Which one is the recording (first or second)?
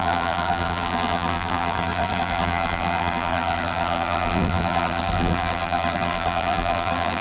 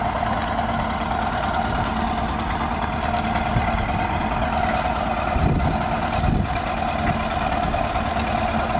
second